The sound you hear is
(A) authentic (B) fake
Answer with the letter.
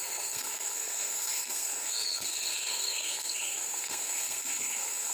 B